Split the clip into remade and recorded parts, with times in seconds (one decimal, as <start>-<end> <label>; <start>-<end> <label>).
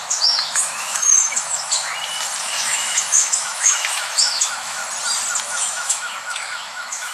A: 0.0-1.9 remade; 1.9-2.4 recorded; 2.4-4.8 remade; 4.8-5.4 recorded; 5.4-7.1 remade